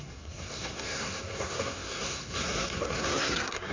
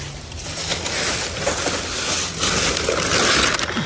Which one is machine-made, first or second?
first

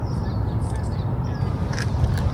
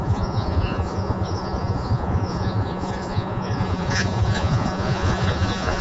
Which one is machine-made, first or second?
second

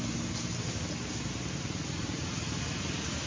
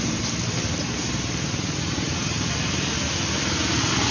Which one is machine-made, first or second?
second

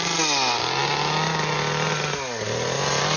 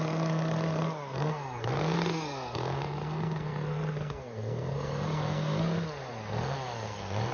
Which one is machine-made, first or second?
second